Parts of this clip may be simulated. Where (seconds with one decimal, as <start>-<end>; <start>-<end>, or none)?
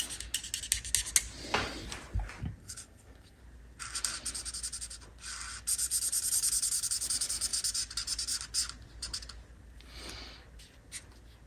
2.6-3.4